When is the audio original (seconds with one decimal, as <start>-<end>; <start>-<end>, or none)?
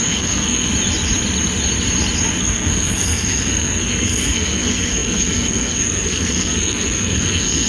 0.7-2.4